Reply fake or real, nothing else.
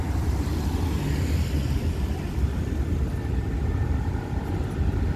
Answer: real